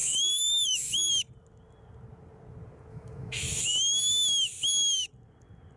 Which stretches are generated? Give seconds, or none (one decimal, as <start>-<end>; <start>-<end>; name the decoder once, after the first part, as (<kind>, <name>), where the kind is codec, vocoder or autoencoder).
0.0-1.1 (autoencoder, DAC-VAE); 2.9-3.6